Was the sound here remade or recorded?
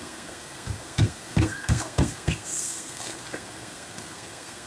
remade